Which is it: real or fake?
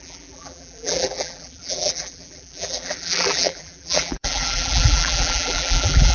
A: fake